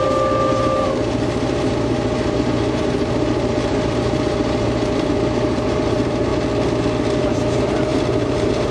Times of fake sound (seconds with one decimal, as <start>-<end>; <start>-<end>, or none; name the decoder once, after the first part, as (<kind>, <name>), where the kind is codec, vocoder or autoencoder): 0.0-6.3 (vocoder, BigVGAN v2); 7.2-8.7